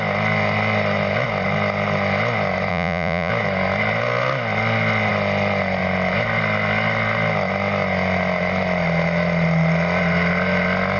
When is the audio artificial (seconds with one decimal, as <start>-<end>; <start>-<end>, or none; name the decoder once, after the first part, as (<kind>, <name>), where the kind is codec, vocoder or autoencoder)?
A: 2.7-3.3 (vocoder, Vocos)